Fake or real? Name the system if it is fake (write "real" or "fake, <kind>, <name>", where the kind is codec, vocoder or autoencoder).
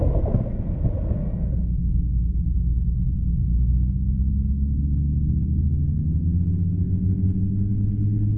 real